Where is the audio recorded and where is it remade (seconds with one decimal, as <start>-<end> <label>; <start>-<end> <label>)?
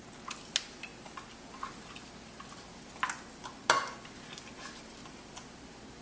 0.0-6.0 recorded